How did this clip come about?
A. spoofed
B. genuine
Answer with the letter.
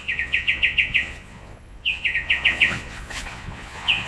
A